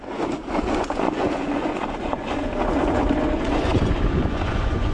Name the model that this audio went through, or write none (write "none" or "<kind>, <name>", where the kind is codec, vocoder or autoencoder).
vocoder, Vocos